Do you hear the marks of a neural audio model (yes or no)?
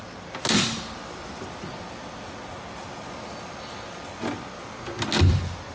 no